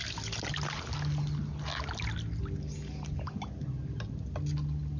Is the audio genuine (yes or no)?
yes